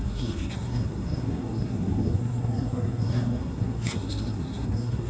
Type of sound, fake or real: fake